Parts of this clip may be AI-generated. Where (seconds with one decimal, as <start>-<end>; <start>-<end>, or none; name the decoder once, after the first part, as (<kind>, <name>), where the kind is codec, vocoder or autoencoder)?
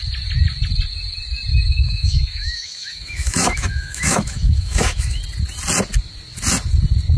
1.5-5.2 (autoencoder, DAC-VAE)